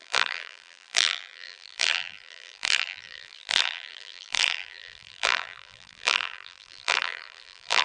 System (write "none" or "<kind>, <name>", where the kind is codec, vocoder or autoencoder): vocoder, BigVGAN v2